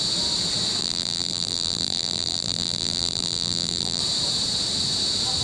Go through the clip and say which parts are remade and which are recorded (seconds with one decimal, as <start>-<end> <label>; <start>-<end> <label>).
0.0-0.8 recorded; 0.8-4.0 remade; 4.0-5.4 recorded